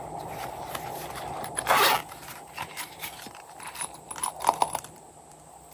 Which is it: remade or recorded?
remade